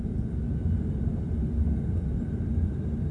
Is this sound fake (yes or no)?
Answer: no